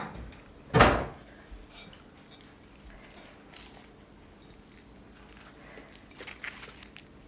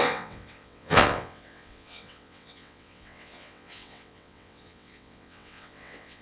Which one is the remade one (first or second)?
second